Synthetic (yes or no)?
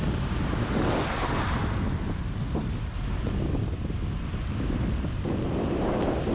no